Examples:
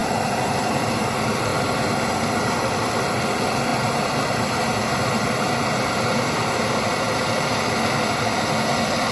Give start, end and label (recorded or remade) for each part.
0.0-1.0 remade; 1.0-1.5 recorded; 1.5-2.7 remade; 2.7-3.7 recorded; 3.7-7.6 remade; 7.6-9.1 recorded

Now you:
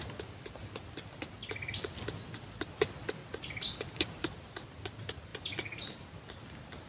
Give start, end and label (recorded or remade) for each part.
0.0-6.9 recorded

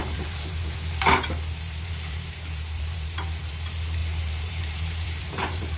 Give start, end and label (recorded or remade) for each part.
0.0-3.5 remade; 3.5-4.0 recorded; 4.0-5.8 remade